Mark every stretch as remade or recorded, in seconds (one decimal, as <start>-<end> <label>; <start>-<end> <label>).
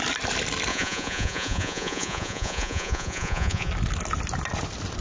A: 0.0-0.7 recorded; 0.7-3.7 remade; 3.7-5.0 recorded